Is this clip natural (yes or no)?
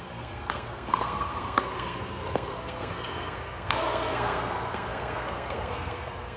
no